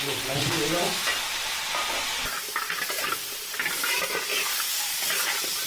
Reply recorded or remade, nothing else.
recorded